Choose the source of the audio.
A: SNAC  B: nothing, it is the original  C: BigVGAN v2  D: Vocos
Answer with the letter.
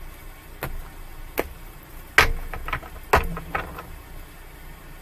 B